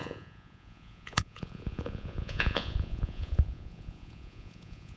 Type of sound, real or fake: fake